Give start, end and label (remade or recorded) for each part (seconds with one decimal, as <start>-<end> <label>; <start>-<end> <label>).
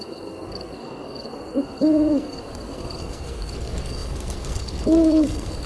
0.0-5.7 remade